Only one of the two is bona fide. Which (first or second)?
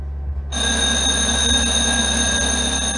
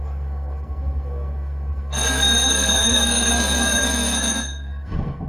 first